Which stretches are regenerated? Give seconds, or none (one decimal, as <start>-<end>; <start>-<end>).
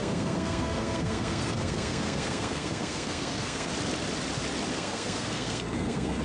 0.0-3.7; 4.7-6.2